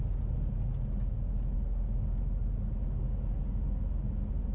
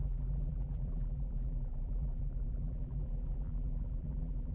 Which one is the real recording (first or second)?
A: first